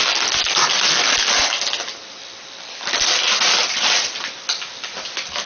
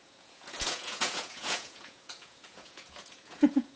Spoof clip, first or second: second